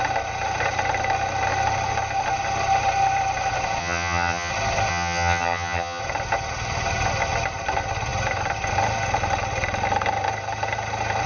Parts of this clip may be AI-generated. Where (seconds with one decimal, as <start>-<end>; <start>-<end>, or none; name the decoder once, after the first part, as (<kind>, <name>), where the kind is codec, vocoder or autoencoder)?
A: 3.8-4.5 (vocoder, HiFi-GAN); 4.9-6.0